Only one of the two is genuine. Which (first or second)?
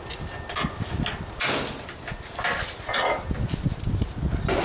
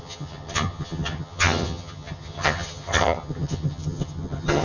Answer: first